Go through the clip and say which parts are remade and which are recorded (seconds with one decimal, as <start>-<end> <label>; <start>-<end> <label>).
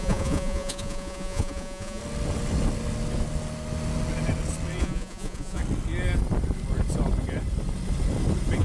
0.0-2.0 remade; 2.0-4.8 recorded; 4.8-5.6 remade; 5.6-8.6 recorded